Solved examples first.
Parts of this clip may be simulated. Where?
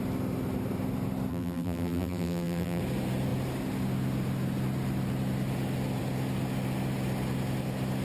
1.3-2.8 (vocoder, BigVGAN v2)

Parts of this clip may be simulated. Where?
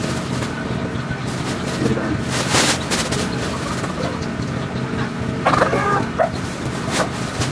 none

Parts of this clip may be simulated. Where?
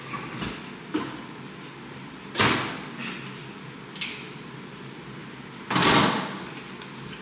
none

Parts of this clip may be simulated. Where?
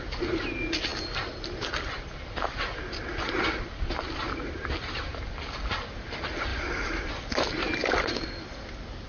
6.5-7.1 (vocoder, BigVGAN v2)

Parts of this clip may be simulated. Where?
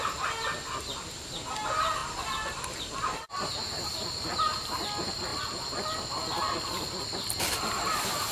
2.0-3.3 (vocoder, BigVGAN v2)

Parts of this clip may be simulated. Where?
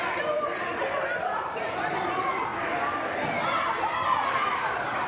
0.0-2.5 (vocoder, BigVGAN v2); 4.3-5.1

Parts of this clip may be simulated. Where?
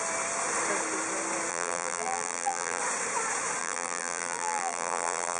1.5-2.8 (vocoder, BigVGAN v2); 3.6-5.4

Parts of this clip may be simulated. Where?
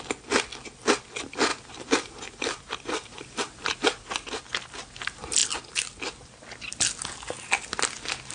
1.5-4.4 (vocoder, BigVGAN v2)